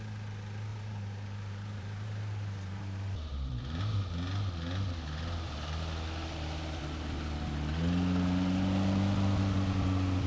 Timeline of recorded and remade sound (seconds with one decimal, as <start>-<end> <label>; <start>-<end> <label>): 0.0-0.7 recorded; 0.7-3.8 remade; 3.8-10.3 recorded